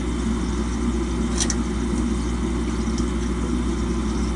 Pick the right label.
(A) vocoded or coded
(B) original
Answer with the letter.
B